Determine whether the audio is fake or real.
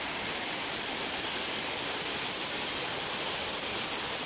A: real